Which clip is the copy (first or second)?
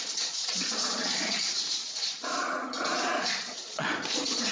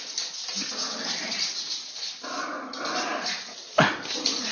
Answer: first